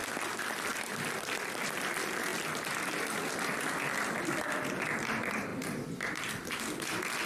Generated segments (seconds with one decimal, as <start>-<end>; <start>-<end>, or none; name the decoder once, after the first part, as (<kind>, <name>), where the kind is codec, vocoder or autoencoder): 0.0-1.6 (vocoder, BigVGAN v2); 2.3-3.6; 5.5-6.6

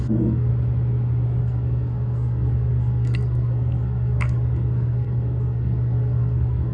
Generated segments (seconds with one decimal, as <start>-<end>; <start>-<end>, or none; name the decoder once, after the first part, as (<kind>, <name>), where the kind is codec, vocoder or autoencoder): 0.0-0.5 (codec, SNAC); 1.4-6.7

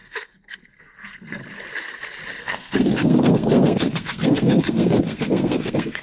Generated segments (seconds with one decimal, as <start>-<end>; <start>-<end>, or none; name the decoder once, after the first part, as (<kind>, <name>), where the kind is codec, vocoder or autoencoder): 0.0-1.4 (codec, SNAC); 2.4-6.0

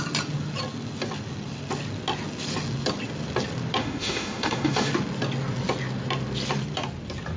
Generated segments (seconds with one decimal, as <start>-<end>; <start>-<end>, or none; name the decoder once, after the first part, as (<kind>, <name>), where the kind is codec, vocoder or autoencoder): 3.8-4.9 (autoencoder, DAC-VAE)

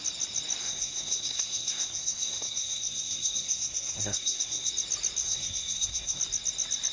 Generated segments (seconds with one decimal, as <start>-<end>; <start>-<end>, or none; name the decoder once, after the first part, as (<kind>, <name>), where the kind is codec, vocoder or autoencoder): 0.6-4.7 (codec, SNAC); 5.2-6.2

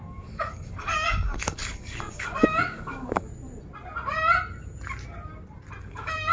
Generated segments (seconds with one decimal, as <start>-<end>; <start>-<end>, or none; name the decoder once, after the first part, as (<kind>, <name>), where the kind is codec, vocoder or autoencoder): 0.0-3.3 (codec, DAC); 5.8-6.3

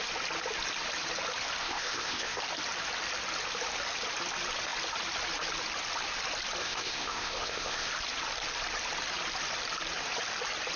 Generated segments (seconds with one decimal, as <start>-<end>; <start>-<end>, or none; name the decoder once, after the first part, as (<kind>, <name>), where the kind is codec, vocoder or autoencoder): 1.6-2.4 (codec, ZipCodec); 6.6-7.9